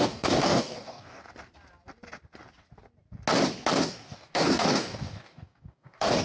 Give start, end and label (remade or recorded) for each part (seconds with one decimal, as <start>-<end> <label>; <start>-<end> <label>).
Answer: 0.0-1.2 remade; 1.2-3.8 recorded; 3.8-6.2 remade